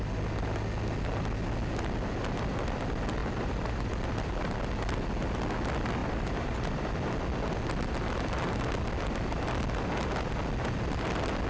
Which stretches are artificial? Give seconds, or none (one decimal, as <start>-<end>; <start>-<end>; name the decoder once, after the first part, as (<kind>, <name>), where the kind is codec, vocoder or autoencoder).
3.2-3.9 (vocoder, BigVGAN v2); 6.0-6.9